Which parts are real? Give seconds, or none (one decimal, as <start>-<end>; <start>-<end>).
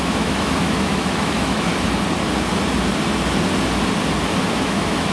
1.7-4.5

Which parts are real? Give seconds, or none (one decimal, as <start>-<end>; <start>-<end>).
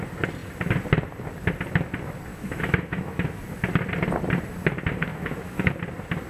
0.0-2.3; 3.4-5.1; 5.7-6.3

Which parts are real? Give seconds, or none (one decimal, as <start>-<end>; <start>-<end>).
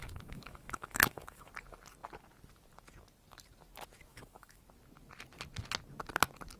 1.5-4.1; 4.6-6.6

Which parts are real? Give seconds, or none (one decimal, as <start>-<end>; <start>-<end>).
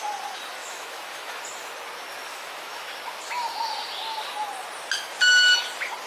0.0-0.6; 1.4-2.3; 2.9-6.1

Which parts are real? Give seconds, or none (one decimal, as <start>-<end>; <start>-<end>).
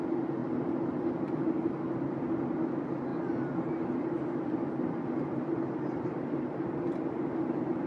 0.0-7.9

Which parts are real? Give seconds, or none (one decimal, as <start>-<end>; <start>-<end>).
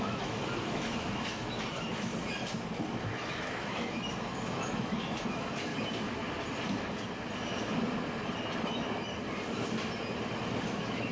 2.1-3.0; 5.7-10.6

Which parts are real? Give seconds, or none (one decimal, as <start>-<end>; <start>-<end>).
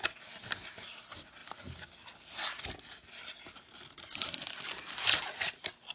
0.0-5.9